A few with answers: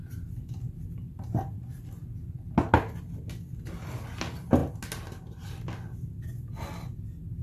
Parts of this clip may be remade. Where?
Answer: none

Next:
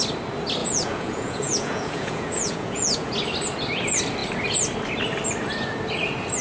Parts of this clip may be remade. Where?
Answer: 0.6-3.1 (vocoder, Vocos)

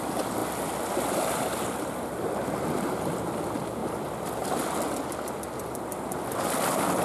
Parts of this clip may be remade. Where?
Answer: none